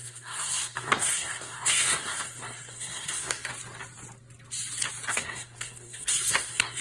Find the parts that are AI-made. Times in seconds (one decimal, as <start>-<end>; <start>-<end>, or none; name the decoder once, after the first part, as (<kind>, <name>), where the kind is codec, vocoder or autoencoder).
0.0-3.5 (codec, SNAC); 5.1-6.8